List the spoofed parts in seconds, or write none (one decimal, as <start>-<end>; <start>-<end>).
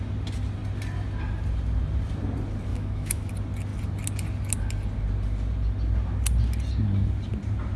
2.7-3.3